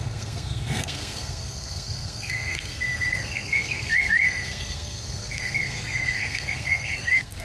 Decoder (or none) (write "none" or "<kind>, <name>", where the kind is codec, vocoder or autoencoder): codec, SNAC